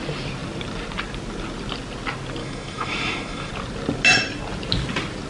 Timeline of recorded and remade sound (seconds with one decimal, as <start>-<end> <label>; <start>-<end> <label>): 0.0-2.4 recorded; 2.4-3.5 remade; 3.5-5.3 recorded